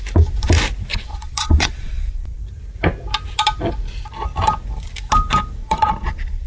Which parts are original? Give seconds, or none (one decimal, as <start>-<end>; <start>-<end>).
0.0-0.9; 2.4-5.6